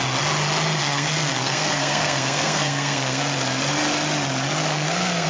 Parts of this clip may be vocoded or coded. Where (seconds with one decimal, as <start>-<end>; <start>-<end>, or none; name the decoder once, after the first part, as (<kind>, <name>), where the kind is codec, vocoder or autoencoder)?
0.8-3.2 (codec, SNAC); 4.6-5.3